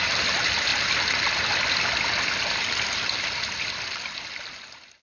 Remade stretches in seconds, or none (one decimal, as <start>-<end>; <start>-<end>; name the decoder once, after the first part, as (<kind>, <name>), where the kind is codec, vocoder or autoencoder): none